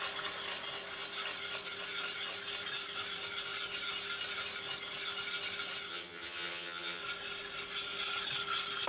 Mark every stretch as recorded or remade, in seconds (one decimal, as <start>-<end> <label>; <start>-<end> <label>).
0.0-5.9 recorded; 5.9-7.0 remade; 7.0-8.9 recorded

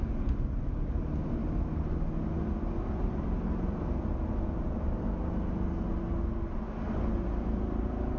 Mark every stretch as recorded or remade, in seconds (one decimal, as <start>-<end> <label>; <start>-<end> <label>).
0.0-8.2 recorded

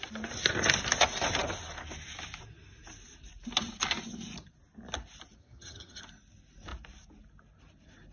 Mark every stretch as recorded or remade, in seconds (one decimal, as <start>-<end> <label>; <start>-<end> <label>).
0.0-5.4 recorded; 5.4-6.0 remade; 6.0-8.1 recorded

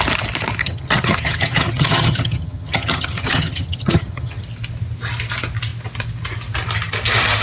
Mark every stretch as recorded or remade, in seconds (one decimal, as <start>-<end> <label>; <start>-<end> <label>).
0.0-0.6 recorded; 0.6-4.4 remade; 4.4-7.4 recorded